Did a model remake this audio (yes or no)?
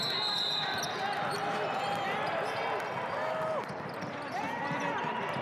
no